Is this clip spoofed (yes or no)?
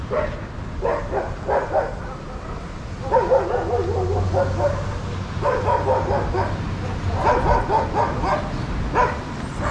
no